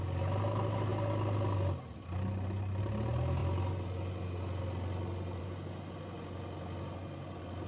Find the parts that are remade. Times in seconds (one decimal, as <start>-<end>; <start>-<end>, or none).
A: none